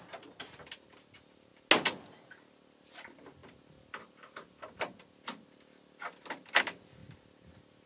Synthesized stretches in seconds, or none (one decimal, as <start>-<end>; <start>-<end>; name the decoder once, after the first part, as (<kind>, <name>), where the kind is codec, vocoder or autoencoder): none